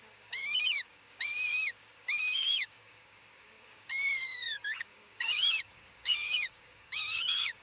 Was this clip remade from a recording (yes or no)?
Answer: yes